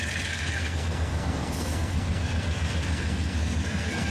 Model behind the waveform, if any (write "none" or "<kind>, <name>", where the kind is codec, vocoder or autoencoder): codec, SNAC